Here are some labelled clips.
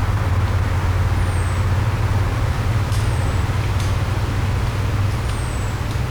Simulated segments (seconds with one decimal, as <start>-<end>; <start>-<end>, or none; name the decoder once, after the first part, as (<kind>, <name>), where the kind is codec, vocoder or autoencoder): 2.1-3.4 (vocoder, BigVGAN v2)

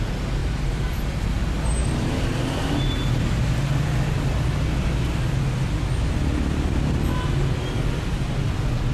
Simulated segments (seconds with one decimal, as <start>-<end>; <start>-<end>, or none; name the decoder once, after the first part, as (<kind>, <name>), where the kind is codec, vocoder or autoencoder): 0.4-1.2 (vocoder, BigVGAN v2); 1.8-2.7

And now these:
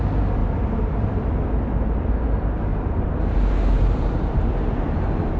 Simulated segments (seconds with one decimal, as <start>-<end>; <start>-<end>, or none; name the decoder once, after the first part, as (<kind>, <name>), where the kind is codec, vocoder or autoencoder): 0.4-1.3 (vocoder, BigVGAN v2); 2.7-4.5